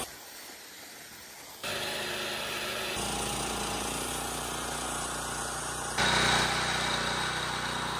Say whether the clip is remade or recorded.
recorded